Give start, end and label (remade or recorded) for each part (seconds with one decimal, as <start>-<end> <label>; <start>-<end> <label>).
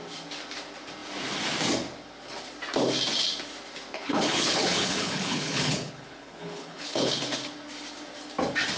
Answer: 0.0-3.9 recorded; 3.9-7.2 remade; 7.2-8.8 recorded